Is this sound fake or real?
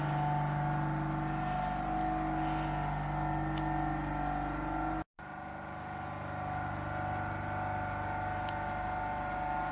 real